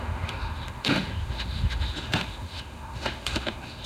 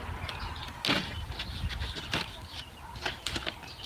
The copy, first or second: first